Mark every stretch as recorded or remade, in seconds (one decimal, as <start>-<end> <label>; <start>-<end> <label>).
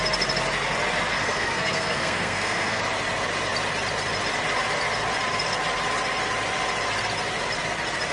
0.0-1.1 recorded; 1.1-2.8 remade; 2.8-8.1 recorded